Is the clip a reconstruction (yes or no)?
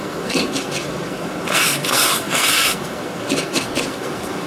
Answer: yes